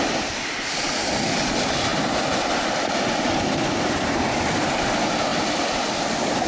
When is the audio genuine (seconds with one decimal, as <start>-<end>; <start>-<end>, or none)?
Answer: 0.0-6.5